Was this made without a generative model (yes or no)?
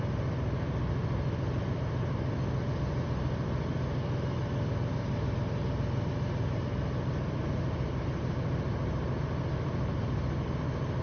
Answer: yes